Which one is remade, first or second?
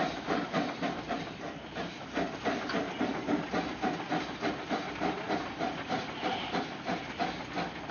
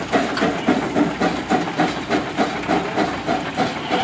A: first